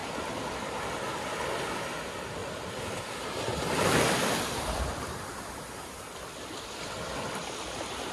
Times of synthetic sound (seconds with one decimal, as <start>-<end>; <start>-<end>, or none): none